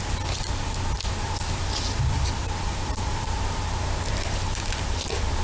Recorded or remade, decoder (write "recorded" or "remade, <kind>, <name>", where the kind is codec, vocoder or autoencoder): recorded